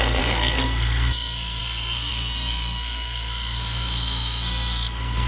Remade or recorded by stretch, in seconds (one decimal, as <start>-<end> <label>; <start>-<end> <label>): 0.0-5.3 remade